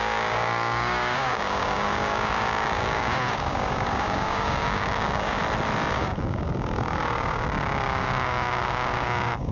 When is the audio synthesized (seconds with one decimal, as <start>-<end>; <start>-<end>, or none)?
0.0-5.4; 5.9-9.5